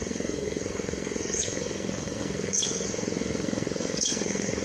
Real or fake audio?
fake